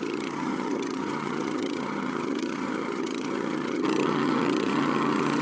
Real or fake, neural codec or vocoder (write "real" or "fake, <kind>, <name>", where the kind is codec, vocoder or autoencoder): fake, vocoder, HiFi-GAN